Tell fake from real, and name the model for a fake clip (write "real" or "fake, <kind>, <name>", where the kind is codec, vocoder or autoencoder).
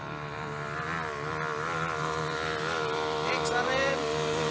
real